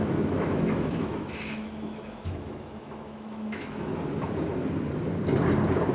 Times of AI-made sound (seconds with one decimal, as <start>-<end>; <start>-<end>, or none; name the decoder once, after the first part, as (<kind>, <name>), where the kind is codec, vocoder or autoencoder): 0.0-3.9 (autoencoder, DAC-VAE)